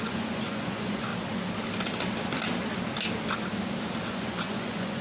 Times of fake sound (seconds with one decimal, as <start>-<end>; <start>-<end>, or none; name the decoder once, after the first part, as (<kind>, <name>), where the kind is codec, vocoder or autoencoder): 0.0-1.1 (vocoder, Vocos); 4.1-5.0